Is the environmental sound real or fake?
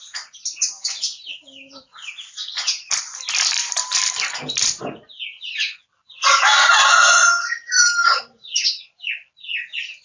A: real